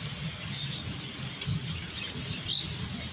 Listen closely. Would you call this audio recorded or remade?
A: recorded